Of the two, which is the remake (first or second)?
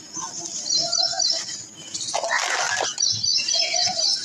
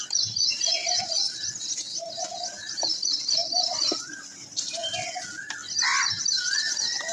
second